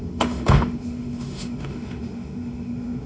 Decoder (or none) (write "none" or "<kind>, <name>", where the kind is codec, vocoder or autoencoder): autoencoder, DAC-VAE